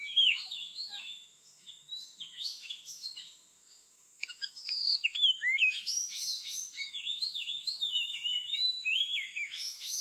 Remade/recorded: remade